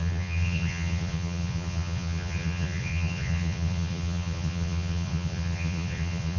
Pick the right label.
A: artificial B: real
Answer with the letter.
A